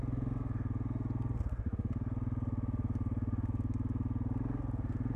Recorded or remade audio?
recorded